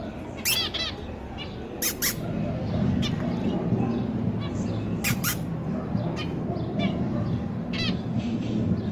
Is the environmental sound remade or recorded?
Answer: recorded